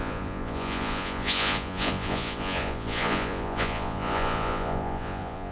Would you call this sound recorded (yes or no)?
no